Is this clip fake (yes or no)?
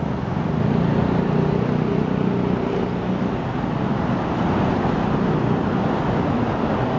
no